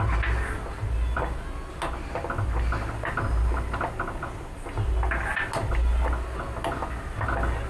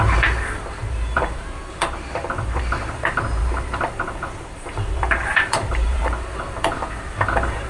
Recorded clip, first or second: first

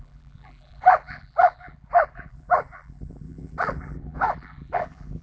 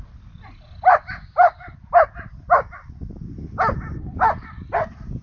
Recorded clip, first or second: second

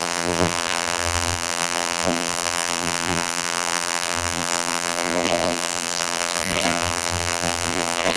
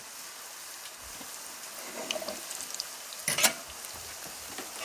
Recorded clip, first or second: second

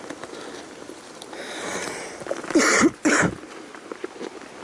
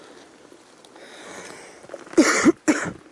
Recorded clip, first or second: second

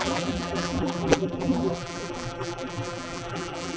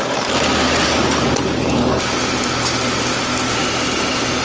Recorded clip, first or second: second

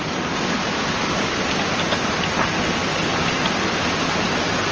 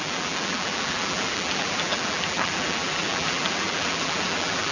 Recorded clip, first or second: first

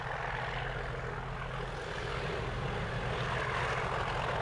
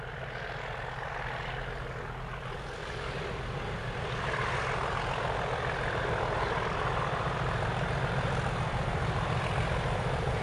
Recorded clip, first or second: first